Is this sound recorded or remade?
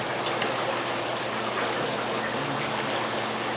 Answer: recorded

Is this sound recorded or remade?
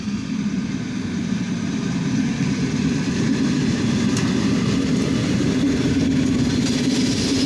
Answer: recorded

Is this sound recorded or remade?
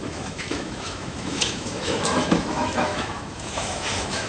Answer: remade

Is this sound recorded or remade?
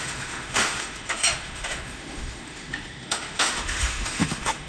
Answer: remade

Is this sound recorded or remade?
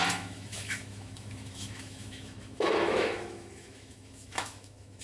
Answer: remade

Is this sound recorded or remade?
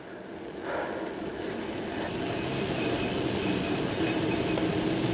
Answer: recorded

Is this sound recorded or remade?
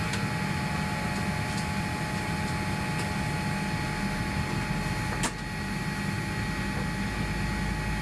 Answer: recorded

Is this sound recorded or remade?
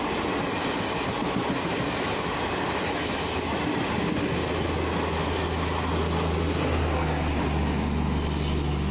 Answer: recorded